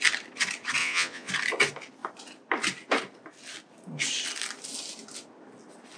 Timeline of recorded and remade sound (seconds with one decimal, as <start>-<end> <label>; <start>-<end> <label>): 0.0-0.8 recorded; 0.8-1.3 remade; 1.3-6.0 recorded